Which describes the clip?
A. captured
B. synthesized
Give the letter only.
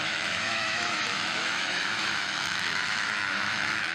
B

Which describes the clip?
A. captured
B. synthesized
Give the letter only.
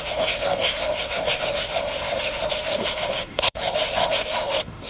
B